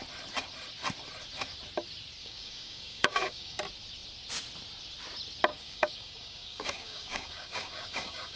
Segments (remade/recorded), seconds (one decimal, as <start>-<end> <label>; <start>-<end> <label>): 0.0-2.2 recorded; 2.2-3.6 remade; 3.6-5.5 recorded; 5.5-8.4 remade